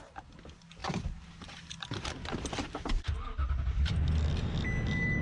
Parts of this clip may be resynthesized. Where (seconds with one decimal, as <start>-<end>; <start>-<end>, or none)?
none